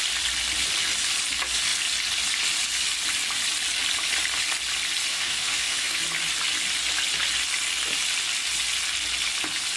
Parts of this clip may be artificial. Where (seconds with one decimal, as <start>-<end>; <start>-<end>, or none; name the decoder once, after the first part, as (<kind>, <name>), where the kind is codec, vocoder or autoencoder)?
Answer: 5.1-6.0 (autoencoder, DAC-VAE)